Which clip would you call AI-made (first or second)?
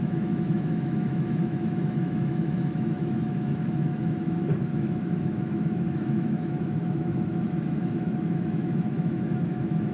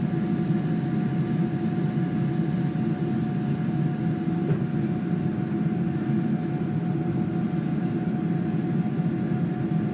first